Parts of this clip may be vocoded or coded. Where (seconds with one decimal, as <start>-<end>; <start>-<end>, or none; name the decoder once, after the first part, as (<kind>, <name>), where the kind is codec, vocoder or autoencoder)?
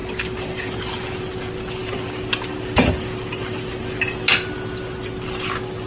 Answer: none